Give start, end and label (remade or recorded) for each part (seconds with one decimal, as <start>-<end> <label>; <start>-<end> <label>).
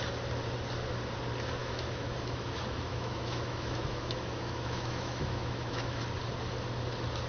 0.0-1.6 recorded; 1.6-6.0 remade; 6.0-7.3 recorded